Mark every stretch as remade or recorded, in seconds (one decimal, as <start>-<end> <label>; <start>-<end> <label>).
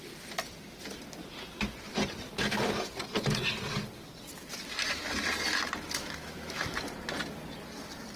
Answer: 0.0-6.0 recorded; 6.0-6.8 remade; 6.8-8.2 recorded